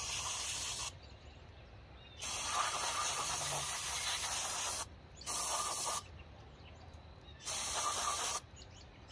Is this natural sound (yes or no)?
yes